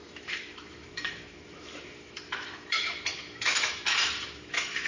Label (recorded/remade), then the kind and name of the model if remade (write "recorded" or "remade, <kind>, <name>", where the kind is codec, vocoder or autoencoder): remade, autoencoder, DAC-VAE